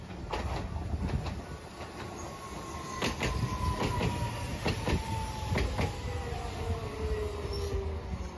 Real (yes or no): yes